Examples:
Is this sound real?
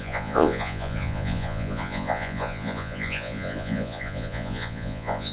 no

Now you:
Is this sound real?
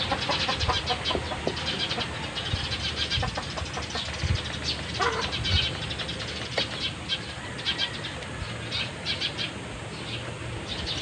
yes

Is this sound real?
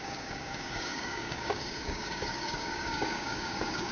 no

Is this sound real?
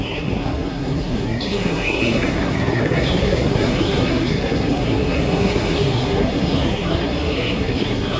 no